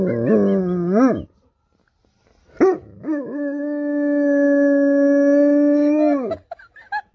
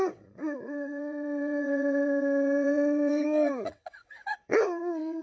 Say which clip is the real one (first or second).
first